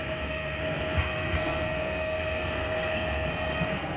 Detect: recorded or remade remade